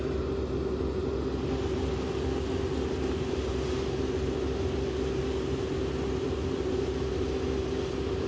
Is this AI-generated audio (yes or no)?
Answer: no